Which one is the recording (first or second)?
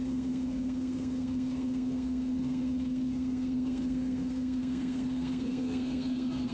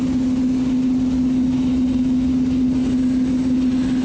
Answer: second